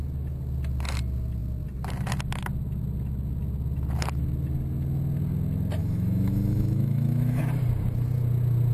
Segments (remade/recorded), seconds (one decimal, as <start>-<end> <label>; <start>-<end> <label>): 0.0-5.8 recorded; 5.8-7.4 remade; 7.4-8.7 recorded